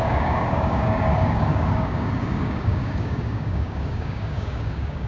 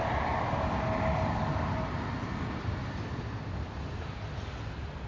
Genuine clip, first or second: second